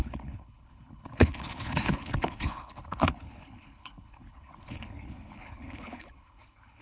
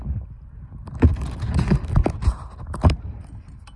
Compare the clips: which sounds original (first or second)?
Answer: second